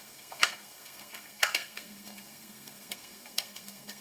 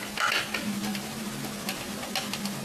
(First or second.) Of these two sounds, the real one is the second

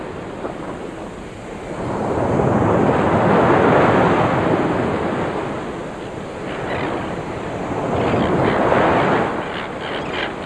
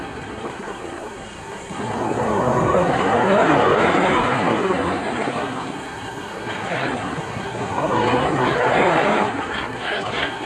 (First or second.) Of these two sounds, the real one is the first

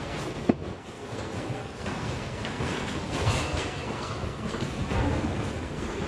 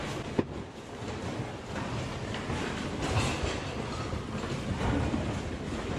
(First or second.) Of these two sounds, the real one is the second